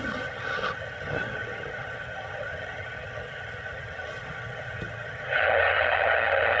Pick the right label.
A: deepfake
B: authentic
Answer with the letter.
A